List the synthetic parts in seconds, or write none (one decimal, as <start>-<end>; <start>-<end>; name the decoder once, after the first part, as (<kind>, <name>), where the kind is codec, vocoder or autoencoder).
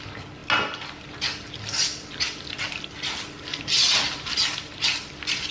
none